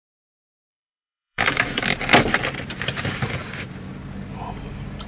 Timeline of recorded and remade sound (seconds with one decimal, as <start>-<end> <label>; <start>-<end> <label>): 0.0-0.7 recorded; 0.7-1.8 remade; 1.8-5.1 recorded